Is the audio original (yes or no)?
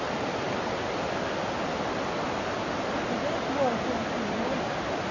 yes